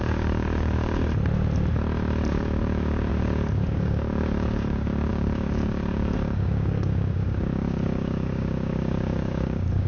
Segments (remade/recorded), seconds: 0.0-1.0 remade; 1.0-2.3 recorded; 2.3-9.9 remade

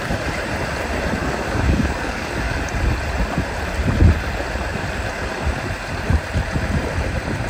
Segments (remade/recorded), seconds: 0.0-1.2 recorded; 1.2-2.6 remade; 2.6-7.5 recorded